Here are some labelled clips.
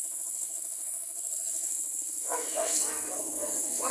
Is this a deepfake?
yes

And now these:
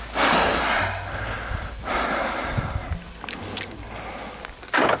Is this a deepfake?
no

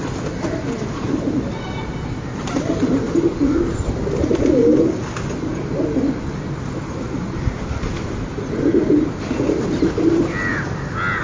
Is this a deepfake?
no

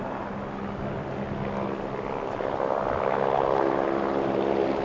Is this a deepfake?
no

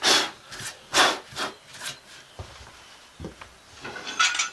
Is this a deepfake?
no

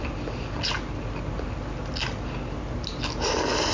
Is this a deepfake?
no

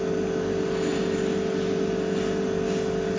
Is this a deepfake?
no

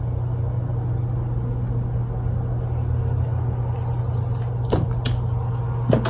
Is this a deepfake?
no